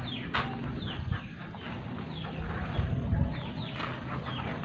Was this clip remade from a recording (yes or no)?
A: no